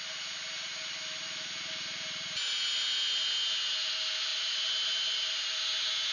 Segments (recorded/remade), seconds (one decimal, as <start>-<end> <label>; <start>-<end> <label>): 0.0-6.1 recorded